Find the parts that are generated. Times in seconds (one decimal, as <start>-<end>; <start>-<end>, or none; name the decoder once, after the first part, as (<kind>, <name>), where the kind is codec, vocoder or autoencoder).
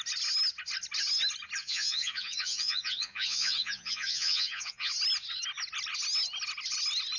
1.6-4.9 (vocoder, Vocos)